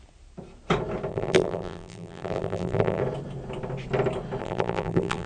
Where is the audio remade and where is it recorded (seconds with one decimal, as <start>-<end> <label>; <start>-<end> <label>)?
0.0-1.1 recorded; 1.1-3.0 remade; 3.0-4.4 recorded; 4.4-5.3 remade